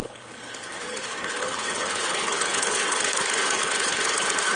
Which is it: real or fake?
fake